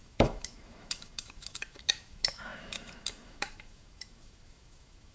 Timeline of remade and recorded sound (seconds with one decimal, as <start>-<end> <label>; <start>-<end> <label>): 0.0-5.1 remade

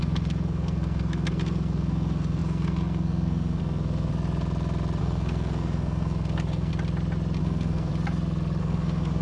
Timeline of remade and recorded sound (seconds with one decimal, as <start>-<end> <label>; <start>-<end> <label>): 0.0-4.1 remade; 4.1-5.0 recorded; 5.0-6.7 remade; 6.7-7.4 recorded; 7.4-7.9 remade; 7.9-8.6 recorded; 8.6-9.2 remade

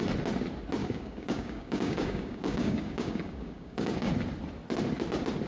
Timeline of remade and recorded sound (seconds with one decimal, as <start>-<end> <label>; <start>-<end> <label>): 0.0-0.8 recorded; 0.8-4.1 remade; 4.1-5.5 recorded

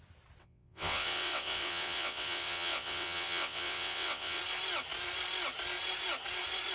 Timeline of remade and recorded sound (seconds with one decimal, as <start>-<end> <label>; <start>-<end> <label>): 0.0-0.4 recorded; 0.4-4.4 remade; 4.4-6.7 recorded

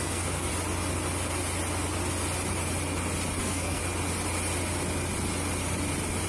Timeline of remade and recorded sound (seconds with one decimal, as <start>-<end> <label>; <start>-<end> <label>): 0.0-0.5 remade; 0.5-3.4 recorded; 3.4-3.8 remade; 3.8-6.3 recorded

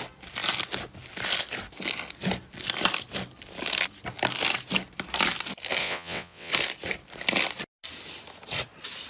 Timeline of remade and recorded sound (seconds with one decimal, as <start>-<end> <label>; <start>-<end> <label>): 0.0-5.8 recorded; 5.8-6.5 remade; 6.5-9.1 recorded

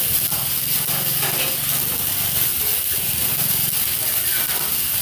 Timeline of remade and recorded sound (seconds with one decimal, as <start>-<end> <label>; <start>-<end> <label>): 0.0-5.0 recorded